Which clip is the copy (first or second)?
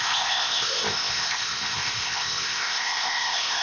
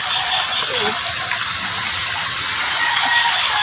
first